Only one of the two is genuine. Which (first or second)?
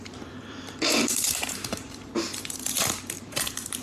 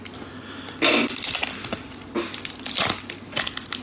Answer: second